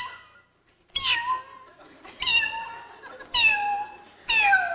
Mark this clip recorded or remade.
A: recorded